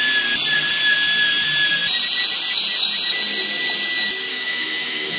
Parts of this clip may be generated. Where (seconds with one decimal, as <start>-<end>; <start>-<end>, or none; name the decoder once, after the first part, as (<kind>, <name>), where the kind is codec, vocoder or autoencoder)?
4.3-5.2 (autoencoder, DAC-VAE)